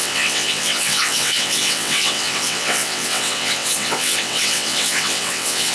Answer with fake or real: fake